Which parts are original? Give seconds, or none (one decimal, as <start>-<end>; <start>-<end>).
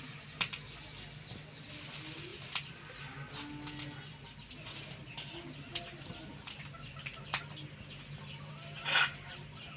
0.0-9.8